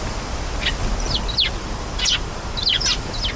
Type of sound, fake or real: real